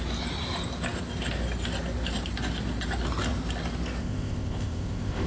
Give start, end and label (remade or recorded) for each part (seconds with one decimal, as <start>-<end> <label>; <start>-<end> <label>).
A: 0.0-4.0 recorded; 4.0-5.3 remade